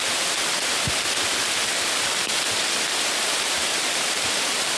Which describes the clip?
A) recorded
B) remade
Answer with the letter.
B